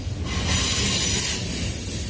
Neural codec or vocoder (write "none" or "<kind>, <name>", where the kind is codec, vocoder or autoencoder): none